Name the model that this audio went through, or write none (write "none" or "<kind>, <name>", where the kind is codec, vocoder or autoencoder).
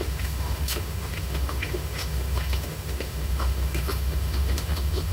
autoencoder, DAC-VAE